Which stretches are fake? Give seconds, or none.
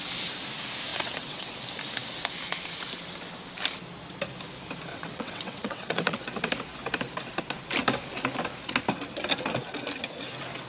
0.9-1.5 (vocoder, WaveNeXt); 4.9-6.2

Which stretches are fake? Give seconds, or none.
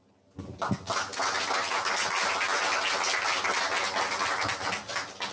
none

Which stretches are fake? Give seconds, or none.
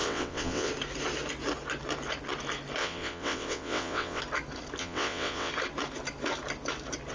0.0-0.7 (vocoder, WaveNeXt); 2.8-4.2; 4.8-5.5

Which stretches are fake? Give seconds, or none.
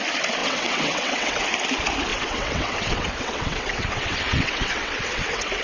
0.4-1.4 (vocoder, WaveNeXt); 2.1-5.6